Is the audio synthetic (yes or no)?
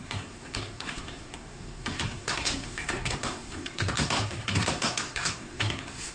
yes